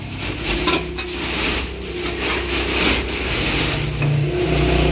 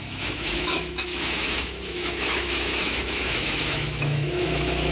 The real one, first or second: first